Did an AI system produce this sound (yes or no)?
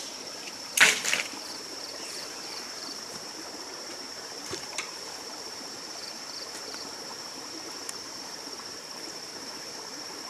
yes